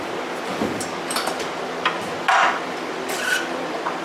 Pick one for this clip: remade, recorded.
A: remade